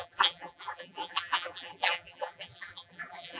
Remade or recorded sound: remade